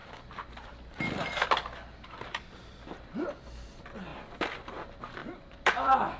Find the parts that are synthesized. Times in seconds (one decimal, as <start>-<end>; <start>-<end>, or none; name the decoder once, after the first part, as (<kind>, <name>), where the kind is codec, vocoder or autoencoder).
0.0-3.4 (vocoder, BigVGAN v2); 4.1-4.7; 5.2-6.2